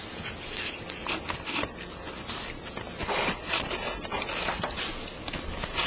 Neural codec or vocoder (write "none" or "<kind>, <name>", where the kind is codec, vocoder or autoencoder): none